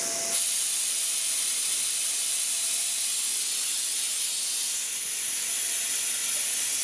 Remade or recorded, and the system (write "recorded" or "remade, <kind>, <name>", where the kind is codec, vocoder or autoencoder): recorded